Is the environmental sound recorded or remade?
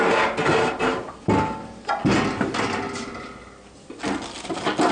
recorded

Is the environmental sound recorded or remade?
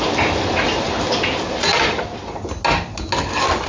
recorded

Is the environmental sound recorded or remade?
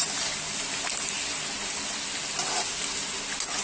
recorded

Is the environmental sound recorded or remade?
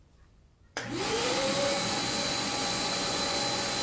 remade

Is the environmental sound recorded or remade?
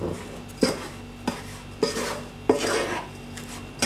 recorded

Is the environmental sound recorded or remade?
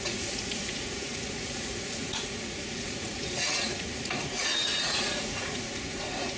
remade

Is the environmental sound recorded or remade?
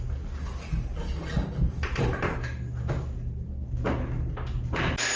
recorded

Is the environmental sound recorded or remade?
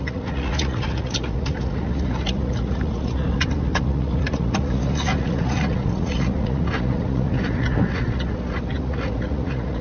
remade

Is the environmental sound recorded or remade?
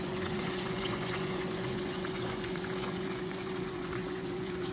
remade